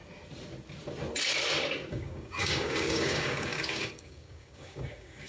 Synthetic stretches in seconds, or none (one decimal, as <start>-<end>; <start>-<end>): 1.9-5.3